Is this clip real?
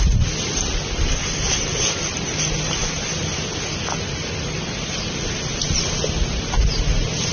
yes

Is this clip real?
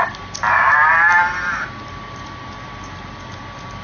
yes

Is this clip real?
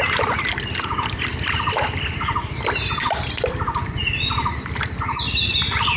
yes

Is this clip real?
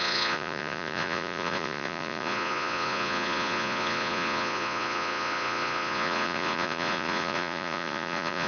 no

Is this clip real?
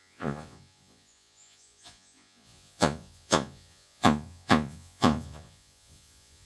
no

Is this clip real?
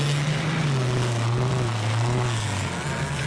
yes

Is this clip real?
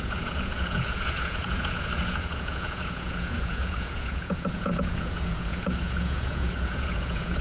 no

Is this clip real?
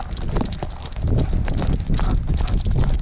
yes